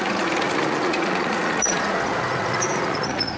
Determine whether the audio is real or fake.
fake